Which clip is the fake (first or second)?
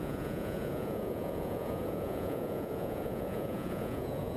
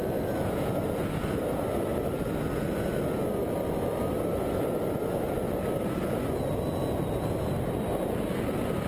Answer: first